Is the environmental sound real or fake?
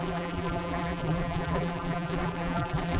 fake